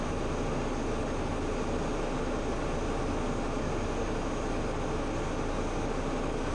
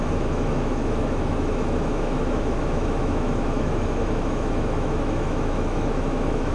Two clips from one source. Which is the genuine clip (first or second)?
first